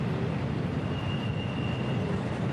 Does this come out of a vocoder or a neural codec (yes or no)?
yes